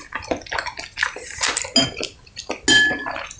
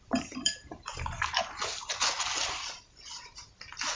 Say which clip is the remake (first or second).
second